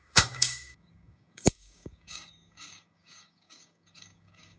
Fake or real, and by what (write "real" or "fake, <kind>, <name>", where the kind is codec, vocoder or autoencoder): fake, codec, DAC